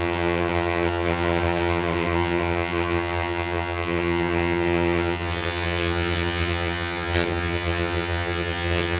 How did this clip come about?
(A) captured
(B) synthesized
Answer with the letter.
B